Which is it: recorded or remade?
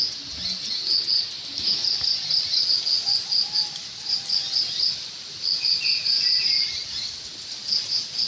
recorded